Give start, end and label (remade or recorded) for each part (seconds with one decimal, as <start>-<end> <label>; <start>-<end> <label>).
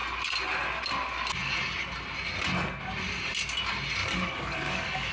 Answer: 0.0-4.0 recorded; 4.0-5.1 remade